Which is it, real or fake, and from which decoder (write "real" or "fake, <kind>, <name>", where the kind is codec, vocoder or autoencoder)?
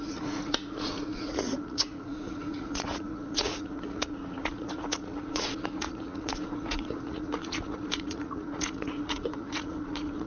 fake, vocoder, Vocos